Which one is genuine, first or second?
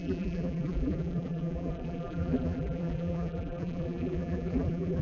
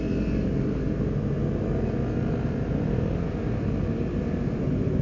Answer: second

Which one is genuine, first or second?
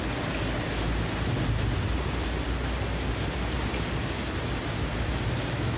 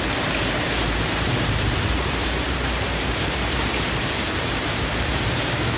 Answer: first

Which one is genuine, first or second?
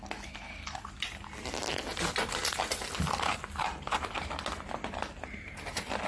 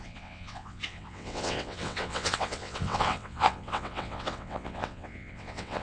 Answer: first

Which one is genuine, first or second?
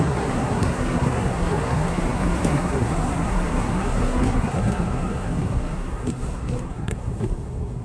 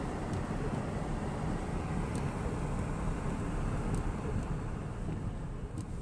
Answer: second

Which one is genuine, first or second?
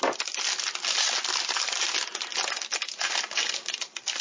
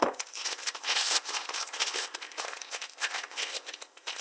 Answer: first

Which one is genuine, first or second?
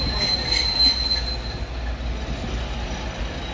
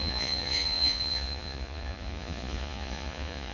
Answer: first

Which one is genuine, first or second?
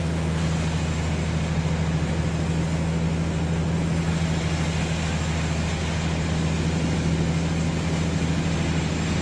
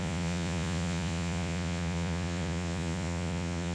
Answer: first